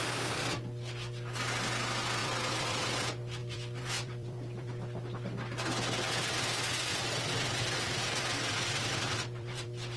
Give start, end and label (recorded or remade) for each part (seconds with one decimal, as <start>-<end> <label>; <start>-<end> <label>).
0.0-2.2 recorded; 2.2-2.8 remade; 2.8-3.4 recorded; 3.4-4.7 remade; 4.7-6.9 recorded; 6.9-10.0 remade